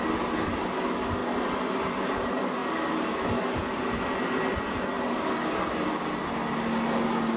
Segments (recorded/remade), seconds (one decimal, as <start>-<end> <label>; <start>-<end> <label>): 0.0-7.4 recorded